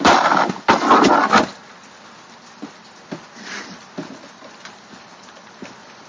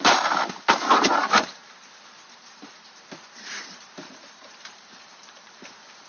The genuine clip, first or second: first